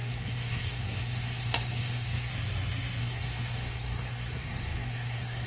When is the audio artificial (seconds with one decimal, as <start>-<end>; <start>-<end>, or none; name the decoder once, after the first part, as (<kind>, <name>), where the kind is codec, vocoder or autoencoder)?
0.0-2.3 (codec, SNAC); 3.0-5.5